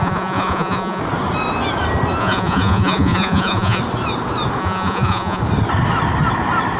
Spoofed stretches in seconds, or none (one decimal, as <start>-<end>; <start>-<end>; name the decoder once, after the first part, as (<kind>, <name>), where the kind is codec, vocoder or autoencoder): 0.0-1.0 (vocoder, Vocos); 2.2-3.8; 4.6-5.4